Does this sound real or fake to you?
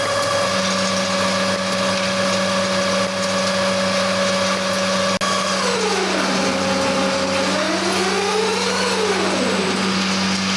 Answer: real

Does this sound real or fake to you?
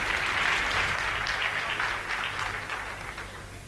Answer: real